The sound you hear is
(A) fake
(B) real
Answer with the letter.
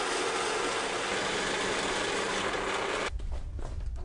B